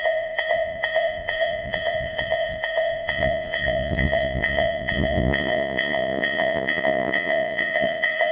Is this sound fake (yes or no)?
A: yes